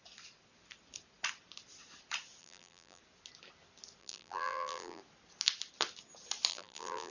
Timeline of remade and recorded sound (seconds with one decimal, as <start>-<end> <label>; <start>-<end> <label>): 0.0-2.4 recorded; 2.4-3.0 remade; 3.0-4.0 recorded; 4.0-5.0 remade; 5.0-6.5 recorded; 6.5-7.1 remade